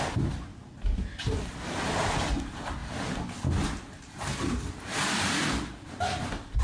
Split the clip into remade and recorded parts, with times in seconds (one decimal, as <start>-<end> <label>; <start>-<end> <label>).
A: 0.0-6.6 recorded